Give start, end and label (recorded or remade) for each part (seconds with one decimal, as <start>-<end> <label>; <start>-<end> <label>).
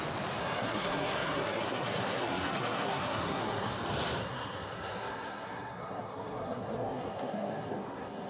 0.0-0.4 recorded; 0.4-3.7 remade; 3.7-4.2 recorded; 4.2-8.3 remade